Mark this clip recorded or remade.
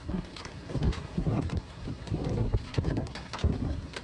remade